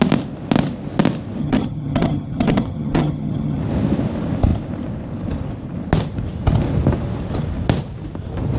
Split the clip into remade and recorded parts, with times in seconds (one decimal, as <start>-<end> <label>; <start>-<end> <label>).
0.0-1.4 recorded; 1.4-3.6 remade; 3.6-8.6 recorded